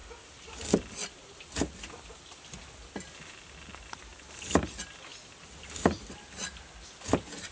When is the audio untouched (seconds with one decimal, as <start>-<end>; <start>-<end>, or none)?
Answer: 0.0-7.5